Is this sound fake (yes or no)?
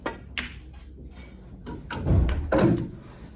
no